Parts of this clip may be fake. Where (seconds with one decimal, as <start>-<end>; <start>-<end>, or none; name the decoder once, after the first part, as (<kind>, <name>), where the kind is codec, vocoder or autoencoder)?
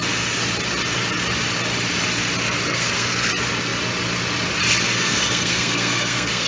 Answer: 2.7-3.3 (codec, SNAC); 5.0-6.5